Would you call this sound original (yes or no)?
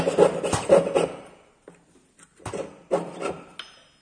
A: yes